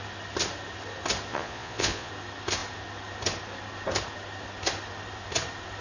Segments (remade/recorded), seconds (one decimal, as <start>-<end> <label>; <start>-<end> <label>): 0.0-1.3 recorded; 1.3-2.1 remade; 2.1-5.8 recorded